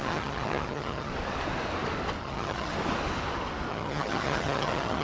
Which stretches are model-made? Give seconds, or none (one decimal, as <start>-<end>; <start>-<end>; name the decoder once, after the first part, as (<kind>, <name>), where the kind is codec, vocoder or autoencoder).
0.0-1.1 (vocoder, HiFi-GAN); 2.2-2.7; 3.7-5.0

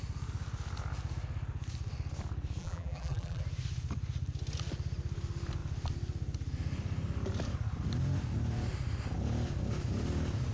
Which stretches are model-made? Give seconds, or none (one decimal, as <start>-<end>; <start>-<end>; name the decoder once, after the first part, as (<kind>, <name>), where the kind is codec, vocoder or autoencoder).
2.6-3.4 (vocoder, BigVGAN v2)

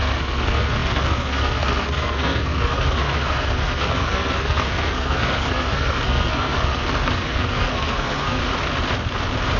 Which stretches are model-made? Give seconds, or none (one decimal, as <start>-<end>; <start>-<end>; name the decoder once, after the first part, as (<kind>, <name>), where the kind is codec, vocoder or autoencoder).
0.0-8.4 (codec, SNAC)